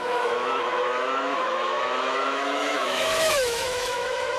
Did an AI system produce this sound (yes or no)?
yes